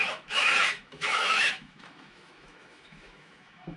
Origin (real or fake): fake